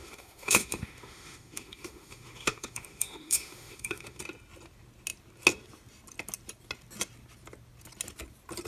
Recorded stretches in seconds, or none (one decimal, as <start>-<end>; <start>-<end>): 4.2-8.7